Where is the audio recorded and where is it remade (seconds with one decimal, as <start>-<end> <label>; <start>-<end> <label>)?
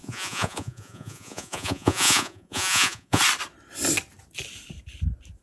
0.0-3.2 remade; 3.2-5.4 recorded